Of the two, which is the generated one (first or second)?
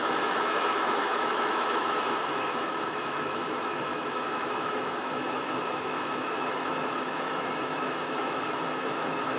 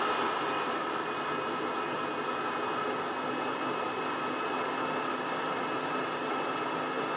first